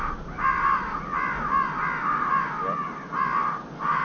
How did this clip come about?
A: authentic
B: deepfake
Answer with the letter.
A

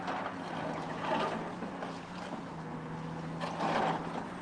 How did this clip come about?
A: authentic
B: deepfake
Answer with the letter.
A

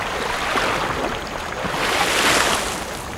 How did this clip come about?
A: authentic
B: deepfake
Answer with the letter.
A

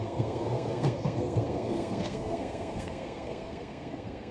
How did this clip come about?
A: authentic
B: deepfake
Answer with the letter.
B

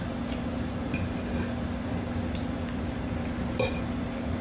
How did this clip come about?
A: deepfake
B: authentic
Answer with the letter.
B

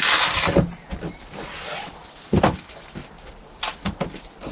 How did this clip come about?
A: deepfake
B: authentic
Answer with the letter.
B